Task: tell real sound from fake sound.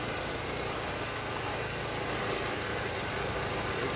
real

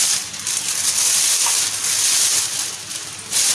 real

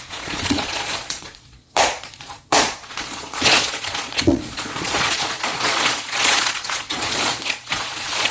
fake